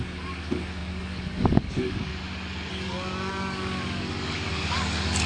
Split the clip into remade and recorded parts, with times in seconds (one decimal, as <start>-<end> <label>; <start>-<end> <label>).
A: 0.0-2.1 remade; 2.1-2.7 recorded; 2.7-5.3 remade